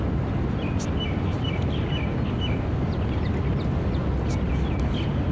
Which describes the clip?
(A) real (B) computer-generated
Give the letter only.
A